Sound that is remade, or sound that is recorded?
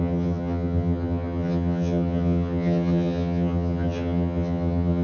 remade